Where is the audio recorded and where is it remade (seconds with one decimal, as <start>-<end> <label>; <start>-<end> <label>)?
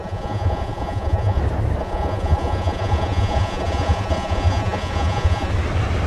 0.0-1.4 remade; 1.4-1.8 recorded; 1.8-5.5 remade; 5.5-6.1 recorded